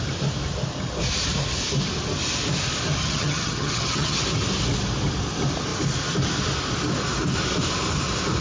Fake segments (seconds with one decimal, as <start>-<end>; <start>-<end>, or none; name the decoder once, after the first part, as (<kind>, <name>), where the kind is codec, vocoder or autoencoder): 3.0-4.2 (vocoder, HiFi-GAN)